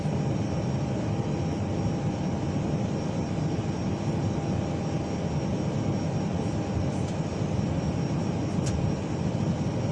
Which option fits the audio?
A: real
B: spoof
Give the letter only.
A